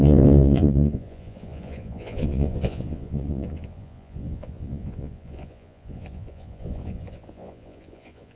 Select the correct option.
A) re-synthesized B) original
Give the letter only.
A